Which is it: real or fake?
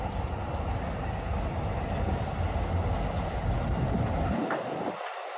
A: real